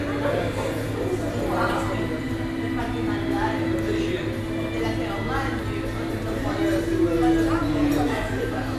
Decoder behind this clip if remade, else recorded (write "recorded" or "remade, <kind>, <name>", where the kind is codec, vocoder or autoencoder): recorded